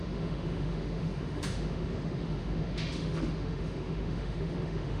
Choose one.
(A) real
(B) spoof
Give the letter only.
B